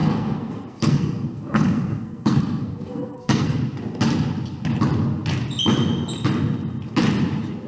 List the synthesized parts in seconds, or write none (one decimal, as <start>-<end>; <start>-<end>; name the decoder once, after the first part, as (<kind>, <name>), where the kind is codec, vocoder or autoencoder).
0.0-3.6 (codec, SNAC)